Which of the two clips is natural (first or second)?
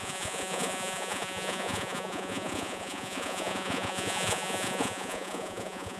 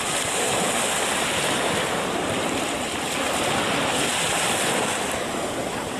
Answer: second